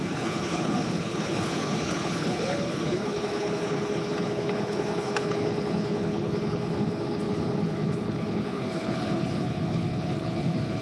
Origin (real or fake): fake